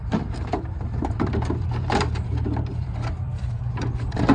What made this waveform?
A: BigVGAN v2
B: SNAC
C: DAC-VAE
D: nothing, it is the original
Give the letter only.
A